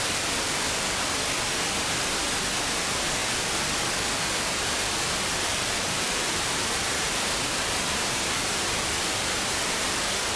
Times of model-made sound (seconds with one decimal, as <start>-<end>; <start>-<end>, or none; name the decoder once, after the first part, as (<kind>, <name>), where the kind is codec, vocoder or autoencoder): 5.3-9.9 (vocoder, BigVGAN v2)

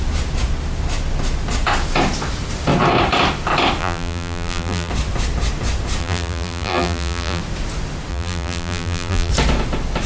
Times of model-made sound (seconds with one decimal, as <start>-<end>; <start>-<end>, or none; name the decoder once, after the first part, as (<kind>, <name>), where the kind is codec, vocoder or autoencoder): 3.8-4.9 (vocoder, BigVGAN v2); 6.0-7.4; 8.1-9.3

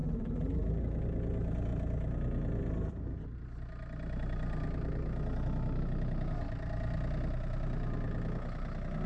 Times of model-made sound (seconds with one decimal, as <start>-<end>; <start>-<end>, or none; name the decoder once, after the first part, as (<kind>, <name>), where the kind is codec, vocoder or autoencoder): 0.0-0.8 (vocoder, BigVGAN v2)